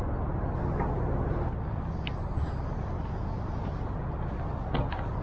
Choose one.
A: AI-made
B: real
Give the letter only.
B